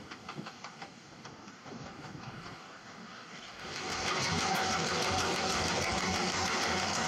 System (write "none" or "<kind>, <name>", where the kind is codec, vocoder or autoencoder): codec, DAC